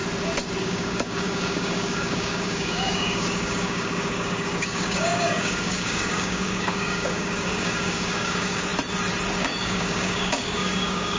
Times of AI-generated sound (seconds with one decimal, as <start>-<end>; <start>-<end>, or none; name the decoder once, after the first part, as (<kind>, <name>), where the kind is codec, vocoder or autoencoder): 0.6-8.7 (codec, DAC); 9.4-11.2